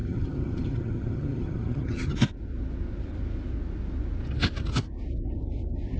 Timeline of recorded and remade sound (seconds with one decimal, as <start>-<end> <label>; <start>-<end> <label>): 0.0-2.2 remade; 2.2-6.0 recorded